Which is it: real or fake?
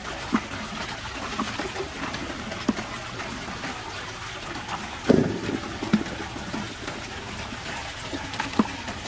real